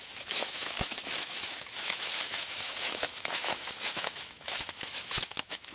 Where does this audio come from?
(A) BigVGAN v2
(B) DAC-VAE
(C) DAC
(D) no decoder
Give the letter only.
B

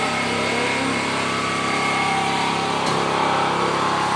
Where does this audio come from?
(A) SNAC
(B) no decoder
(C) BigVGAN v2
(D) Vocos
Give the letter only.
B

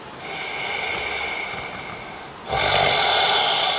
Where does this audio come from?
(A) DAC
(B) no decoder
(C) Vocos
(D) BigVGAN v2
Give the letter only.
B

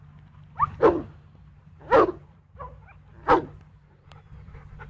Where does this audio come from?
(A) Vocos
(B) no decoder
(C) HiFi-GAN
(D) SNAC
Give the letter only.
B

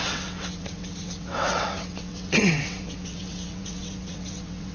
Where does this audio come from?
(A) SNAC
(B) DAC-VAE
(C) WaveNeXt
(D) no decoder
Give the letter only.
C